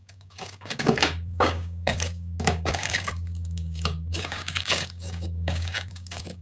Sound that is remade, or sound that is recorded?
remade